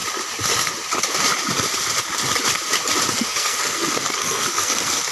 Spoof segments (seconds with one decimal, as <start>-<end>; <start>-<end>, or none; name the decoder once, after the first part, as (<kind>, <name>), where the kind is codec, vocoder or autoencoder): 3.1-5.1 (codec, SNAC)